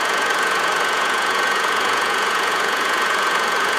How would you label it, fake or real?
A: fake